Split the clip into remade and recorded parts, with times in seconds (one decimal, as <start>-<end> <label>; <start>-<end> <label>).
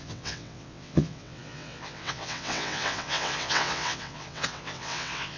0.0-5.4 remade